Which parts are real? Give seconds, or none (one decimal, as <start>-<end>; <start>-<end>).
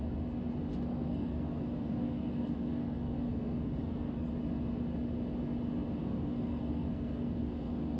0.0-0.7; 4.3-6.0